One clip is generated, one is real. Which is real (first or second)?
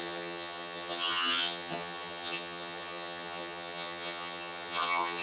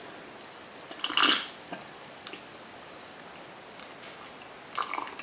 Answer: second